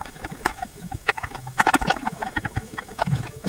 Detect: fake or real fake